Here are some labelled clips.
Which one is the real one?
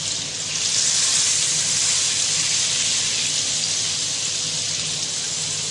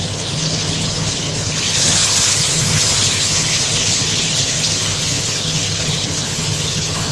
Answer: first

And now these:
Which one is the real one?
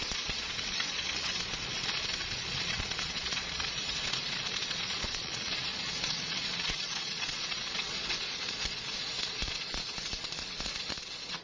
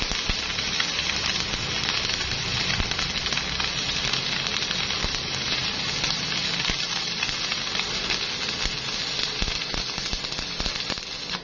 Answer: second